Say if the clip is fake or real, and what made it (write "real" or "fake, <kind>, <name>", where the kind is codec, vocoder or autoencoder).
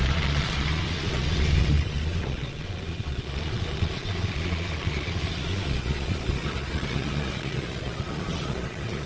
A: fake, vocoder, Vocos